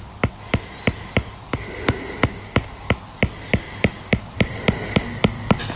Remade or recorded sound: recorded